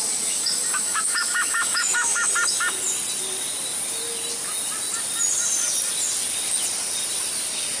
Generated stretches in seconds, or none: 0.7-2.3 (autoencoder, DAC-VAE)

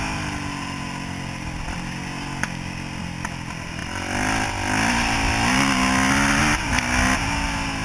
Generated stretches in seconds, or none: none

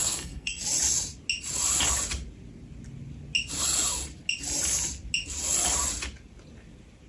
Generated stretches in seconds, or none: 0.0-0.6 (codec, SNAC)

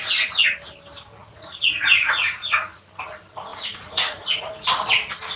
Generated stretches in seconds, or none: 1.2-2.9 (vocoder, Vocos); 3.5-4.5

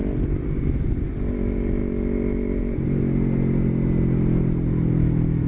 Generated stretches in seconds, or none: none